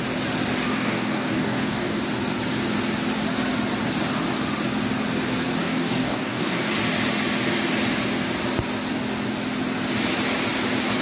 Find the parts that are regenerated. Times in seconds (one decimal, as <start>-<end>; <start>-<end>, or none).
0.7-2.0; 5.6-6.7